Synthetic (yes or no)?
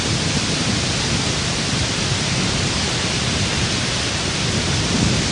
no